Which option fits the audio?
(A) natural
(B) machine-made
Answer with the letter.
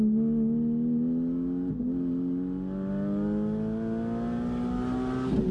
A